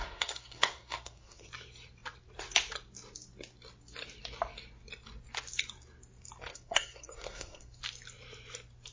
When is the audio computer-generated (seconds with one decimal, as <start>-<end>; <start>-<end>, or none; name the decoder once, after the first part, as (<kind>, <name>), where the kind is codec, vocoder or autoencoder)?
0.0-1.5 (codec, SNAC); 6.5-7.8

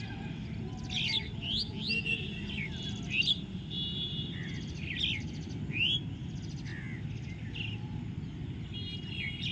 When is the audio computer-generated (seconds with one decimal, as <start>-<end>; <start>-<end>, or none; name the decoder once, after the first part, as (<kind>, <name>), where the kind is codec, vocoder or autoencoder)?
none

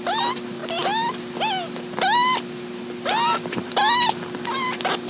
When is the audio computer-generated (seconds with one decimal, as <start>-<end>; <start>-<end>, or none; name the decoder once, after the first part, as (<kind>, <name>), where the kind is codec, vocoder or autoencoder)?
none

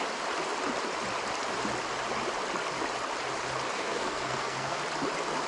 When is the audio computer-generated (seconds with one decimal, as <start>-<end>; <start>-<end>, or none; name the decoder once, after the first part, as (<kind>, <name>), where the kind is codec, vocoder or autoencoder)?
3.7-4.8 (codec, SNAC)